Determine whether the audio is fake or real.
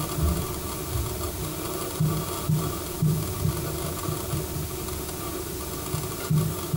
real